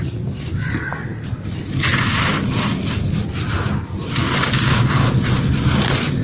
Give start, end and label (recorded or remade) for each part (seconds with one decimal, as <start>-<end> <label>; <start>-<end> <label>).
0.0-6.2 recorded